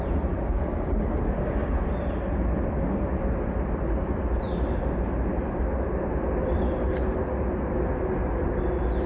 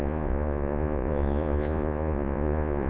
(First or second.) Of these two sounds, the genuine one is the first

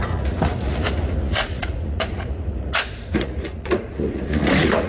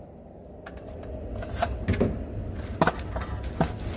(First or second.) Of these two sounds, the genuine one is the second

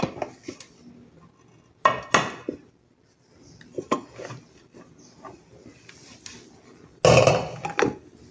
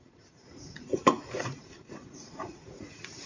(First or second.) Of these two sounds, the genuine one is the first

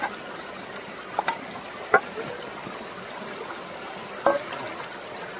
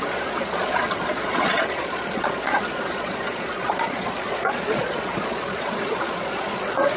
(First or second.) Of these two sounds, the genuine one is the first